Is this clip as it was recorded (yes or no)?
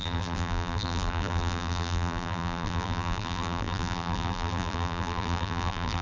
no